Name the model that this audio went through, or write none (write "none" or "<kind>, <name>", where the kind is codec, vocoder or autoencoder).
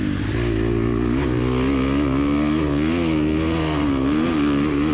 none